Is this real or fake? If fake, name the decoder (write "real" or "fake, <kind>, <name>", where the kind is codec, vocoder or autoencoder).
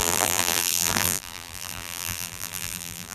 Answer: fake, vocoder, BigVGAN v2